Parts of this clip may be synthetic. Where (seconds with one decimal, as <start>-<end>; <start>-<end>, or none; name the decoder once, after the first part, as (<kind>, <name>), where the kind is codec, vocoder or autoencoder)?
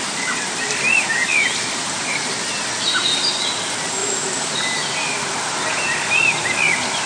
none